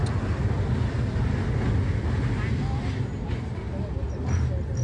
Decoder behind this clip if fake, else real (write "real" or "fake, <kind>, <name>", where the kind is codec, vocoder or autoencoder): real